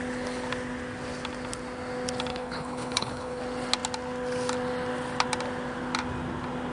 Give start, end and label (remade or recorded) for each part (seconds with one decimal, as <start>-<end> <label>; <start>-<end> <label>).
0.0-2.3 recorded; 2.3-3.4 remade; 3.4-6.7 recorded